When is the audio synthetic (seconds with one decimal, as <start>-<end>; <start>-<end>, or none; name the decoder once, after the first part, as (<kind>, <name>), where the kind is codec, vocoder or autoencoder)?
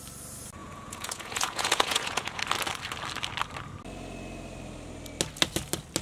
0.6-2.4 (vocoder, Vocos)